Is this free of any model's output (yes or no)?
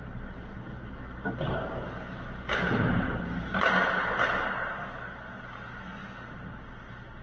yes